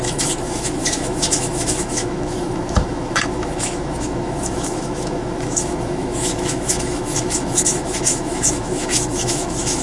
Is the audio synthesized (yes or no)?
yes